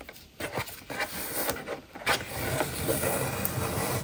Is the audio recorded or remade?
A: recorded